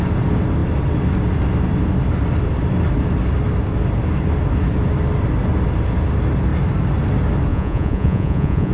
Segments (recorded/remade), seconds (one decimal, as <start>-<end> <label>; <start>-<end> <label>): 0.0-7.5 recorded; 7.5-8.7 remade